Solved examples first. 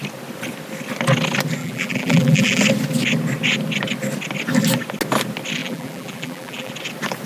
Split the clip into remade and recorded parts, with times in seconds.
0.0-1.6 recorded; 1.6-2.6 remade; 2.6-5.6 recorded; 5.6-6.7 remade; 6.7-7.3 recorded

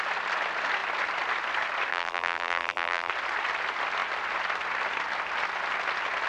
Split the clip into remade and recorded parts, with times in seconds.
0.0-1.9 recorded; 1.9-3.1 remade; 3.1-6.3 recorded

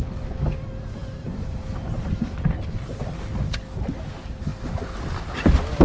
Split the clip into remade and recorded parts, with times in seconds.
0.0-1.0 recorded; 1.0-1.6 remade; 1.6-5.8 recorded